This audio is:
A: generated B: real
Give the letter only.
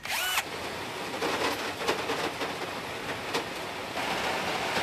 B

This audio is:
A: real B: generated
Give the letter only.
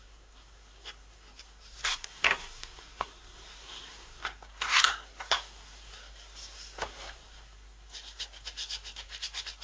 B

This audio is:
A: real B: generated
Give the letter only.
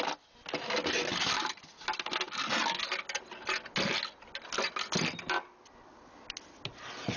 A